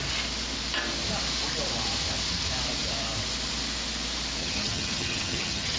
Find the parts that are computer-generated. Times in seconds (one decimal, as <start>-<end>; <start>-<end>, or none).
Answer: 4.4-5.8